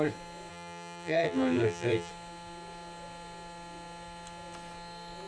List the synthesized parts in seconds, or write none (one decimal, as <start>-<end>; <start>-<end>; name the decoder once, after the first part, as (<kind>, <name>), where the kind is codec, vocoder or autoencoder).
0.5-2.1 (vocoder, BigVGAN v2)